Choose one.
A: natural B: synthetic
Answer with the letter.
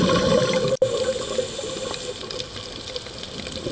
A